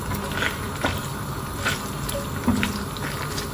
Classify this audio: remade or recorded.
recorded